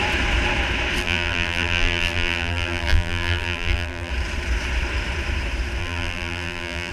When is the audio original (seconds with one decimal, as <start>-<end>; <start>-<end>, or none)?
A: 0.0-1.0; 4.1-5.8